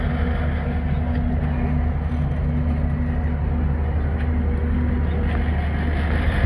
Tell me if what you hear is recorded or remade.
recorded